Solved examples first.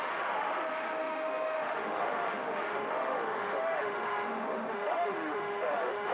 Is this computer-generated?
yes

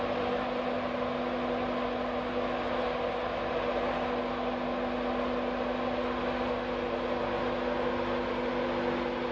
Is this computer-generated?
no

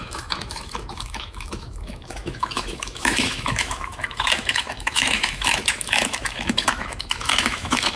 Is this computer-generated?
yes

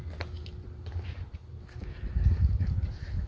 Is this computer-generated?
no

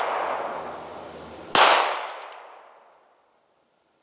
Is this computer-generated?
no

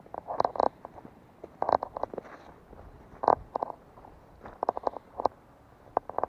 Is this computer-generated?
no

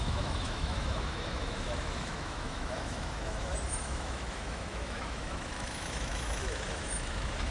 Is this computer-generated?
yes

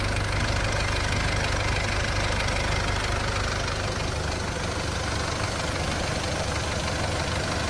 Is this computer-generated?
no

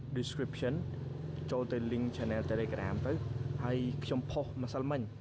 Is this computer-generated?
no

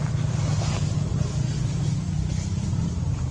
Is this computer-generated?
no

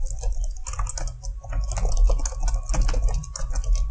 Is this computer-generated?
no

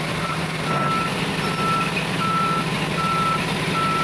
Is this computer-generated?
no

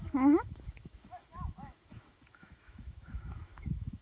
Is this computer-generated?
yes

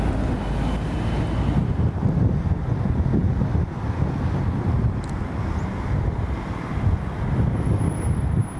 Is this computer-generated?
no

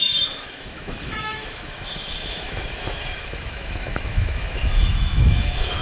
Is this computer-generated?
yes